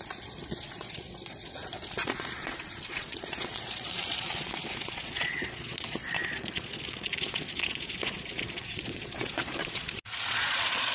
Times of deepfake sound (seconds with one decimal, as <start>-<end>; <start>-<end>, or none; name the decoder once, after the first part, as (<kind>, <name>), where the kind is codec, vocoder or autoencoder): 0.0-10.9 (vocoder, Vocos)